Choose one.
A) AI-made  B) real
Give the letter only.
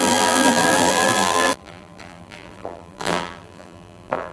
A